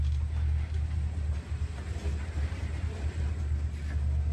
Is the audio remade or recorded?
recorded